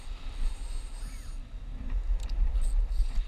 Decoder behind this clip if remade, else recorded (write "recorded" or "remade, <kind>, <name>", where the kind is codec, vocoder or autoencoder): recorded